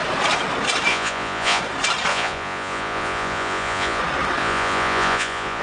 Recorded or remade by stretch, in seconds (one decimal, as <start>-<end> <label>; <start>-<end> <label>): 0.0-0.9 recorded; 0.9-1.6 remade; 1.6-2.1 recorded; 2.1-4.0 remade; 4.0-4.4 recorded; 4.4-5.6 remade

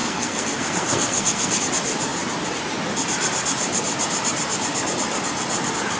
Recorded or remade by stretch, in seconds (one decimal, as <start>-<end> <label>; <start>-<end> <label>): 0.0-1.6 remade; 1.6-6.0 recorded

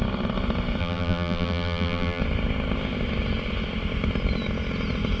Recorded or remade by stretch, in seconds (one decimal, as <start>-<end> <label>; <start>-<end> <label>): 0.0-0.8 recorded; 0.8-2.2 remade; 2.2-5.2 recorded

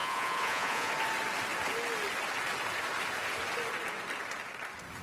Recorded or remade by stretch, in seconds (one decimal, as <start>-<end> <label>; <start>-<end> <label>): 0.0-0.9 remade; 0.9-5.0 recorded

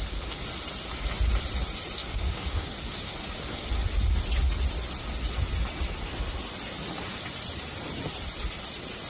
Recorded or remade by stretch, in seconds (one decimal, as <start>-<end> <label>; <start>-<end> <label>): 0.0-2.0 recorded; 2.0-3.7 remade; 3.7-9.1 recorded